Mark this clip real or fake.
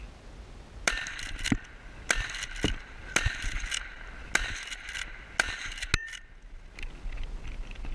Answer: real